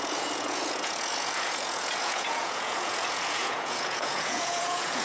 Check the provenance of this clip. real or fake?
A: fake